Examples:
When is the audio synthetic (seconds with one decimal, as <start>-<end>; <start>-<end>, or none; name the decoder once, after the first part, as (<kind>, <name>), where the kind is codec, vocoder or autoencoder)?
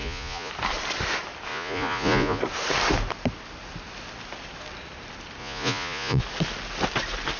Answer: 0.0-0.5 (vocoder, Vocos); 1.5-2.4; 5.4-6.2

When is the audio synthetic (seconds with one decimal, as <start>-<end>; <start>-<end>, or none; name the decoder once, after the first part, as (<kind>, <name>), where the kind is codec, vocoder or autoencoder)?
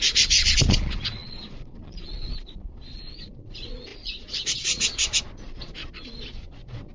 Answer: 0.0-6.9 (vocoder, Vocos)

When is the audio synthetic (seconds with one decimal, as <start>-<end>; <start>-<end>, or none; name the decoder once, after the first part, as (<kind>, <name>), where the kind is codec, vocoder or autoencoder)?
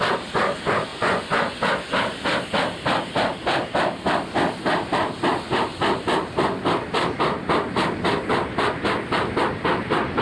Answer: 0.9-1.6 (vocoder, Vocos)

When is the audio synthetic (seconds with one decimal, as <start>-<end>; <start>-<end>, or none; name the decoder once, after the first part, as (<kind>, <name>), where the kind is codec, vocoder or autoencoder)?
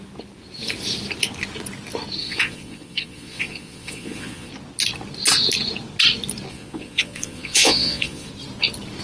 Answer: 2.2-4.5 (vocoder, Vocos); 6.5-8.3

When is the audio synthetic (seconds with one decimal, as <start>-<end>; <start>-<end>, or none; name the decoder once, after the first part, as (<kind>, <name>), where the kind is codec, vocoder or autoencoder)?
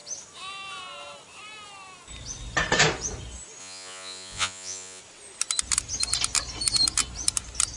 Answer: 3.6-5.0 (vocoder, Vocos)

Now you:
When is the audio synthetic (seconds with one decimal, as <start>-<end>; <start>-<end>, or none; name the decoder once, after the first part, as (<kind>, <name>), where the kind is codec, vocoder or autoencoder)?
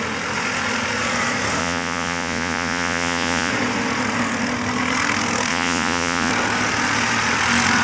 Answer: 1.6-3.5 (vocoder, Vocos); 5.5-6.3